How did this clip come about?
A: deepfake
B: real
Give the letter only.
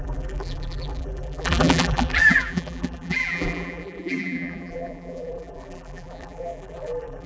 A